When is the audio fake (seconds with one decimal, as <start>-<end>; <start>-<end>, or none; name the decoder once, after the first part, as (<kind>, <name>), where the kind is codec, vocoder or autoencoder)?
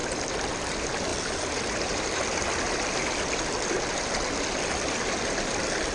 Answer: 1.1-2.4 (vocoder, BigVGAN v2)